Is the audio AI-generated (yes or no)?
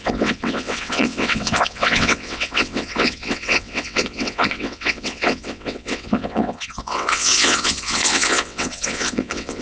yes